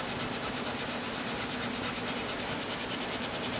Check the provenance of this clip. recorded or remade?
recorded